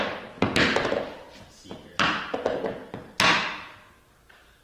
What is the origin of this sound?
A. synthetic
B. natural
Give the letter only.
B